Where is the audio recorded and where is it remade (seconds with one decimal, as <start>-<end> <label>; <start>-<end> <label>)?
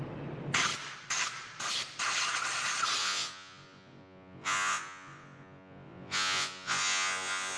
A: 0.0-3.0 recorded; 3.0-7.6 remade